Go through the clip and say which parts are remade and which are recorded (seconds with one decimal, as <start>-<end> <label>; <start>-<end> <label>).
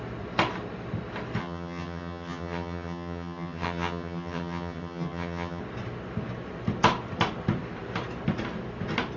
0.0-1.4 recorded; 1.4-5.6 remade; 5.6-9.2 recorded